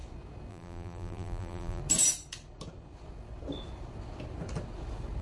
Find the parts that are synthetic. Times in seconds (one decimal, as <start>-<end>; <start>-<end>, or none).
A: 0.5-1.8

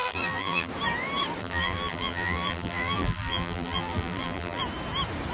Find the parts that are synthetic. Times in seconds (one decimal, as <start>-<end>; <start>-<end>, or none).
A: 0.0-0.7; 1.4-4.6

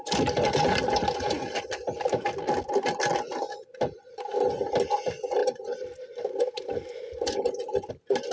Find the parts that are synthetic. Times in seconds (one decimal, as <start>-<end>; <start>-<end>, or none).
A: 5.4-7.9

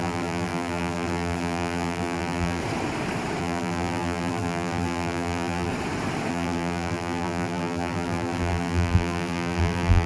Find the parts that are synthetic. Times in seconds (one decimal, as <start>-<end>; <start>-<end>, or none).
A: 0.0-2.6; 3.4-5.7; 6.3-10.1

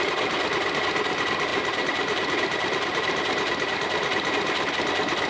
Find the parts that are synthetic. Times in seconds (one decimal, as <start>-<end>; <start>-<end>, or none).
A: 1.5-4.7

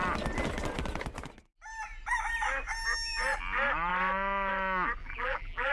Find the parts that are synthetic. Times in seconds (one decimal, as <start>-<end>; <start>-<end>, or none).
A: 5.0-5.7

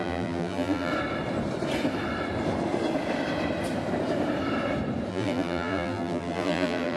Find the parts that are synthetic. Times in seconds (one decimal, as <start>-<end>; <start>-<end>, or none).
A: 0.0-0.9; 5.1-7.0